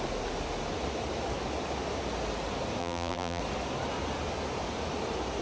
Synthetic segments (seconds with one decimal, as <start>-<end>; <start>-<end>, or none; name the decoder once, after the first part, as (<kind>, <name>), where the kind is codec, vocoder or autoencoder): 2.8-3.4 (vocoder, BigVGAN v2)